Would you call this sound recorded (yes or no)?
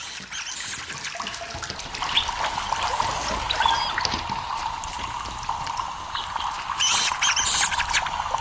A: yes